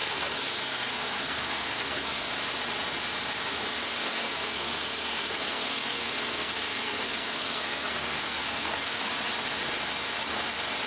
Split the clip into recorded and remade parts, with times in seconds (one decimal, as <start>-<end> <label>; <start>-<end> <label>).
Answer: 0.0-2.3 remade; 2.3-4.0 recorded; 4.0-9.1 remade; 9.1-10.9 recorded